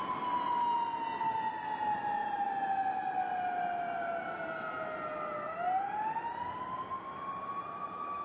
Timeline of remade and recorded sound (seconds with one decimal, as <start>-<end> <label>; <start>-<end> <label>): 0.0-8.2 recorded